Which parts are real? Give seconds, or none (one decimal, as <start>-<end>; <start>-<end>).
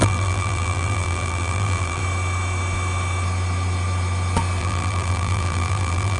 2.0-4.6